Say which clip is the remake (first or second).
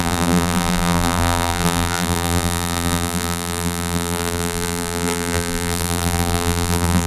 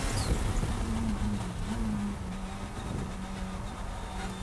first